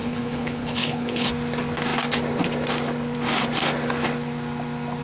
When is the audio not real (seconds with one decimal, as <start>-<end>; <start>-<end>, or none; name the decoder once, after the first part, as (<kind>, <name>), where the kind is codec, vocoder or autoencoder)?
0.0-1.3 (codec, HILCodec)